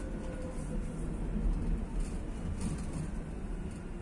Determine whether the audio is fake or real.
real